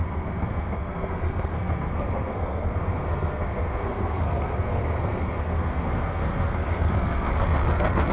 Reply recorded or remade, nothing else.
remade